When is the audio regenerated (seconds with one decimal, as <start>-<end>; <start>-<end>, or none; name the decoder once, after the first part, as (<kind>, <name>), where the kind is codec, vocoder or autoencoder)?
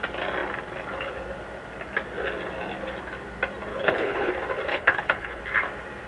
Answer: 3.7-4.3 (codec, HILCodec); 4.7-5.4